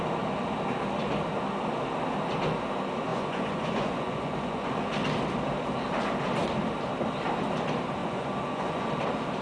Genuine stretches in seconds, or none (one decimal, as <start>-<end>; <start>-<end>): 0.0-3.1; 4.9-8.0; 8.9-9.4

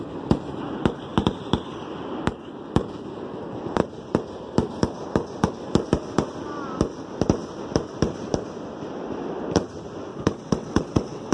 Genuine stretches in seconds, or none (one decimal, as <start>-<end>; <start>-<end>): 0.0-10.1

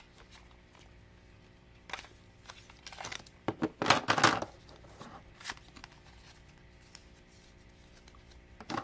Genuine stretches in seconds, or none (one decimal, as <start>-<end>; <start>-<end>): 0.0-8.8

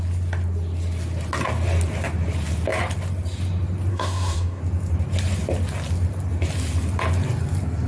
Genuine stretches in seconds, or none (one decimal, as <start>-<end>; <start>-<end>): 0.0-3.9; 4.6-7.9

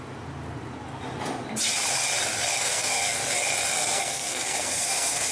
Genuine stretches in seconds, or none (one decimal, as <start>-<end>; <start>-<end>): 0.0-2.5; 3.2-3.8

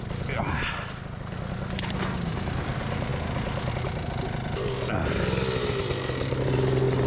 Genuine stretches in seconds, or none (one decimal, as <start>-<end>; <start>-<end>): 0.0-7.1

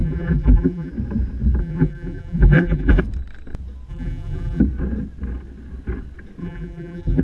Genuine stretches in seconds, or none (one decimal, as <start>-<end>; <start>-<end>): 0.9-1.6; 3.0-3.9; 4.6-6.4

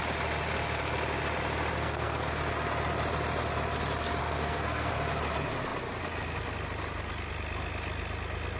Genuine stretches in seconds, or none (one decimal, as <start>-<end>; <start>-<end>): 0.0-1.8; 2.3-4.2; 4.9-8.6